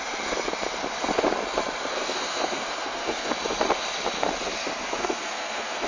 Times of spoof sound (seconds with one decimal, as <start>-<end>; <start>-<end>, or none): 1.9-3.3; 5.0-5.9